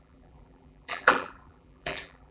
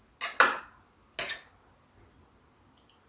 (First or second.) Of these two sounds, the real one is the second